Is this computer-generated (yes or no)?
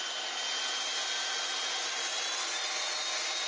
no